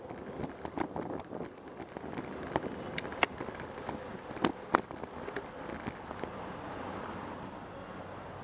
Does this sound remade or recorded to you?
recorded